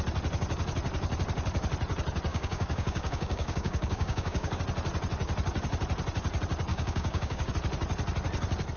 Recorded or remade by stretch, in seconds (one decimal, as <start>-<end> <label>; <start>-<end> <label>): 0.0-2.3 recorded; 2.3-4.6 remade; 4.6-6.7 recorded; 6.7-7.5 remade; 7.5-8.8 recorded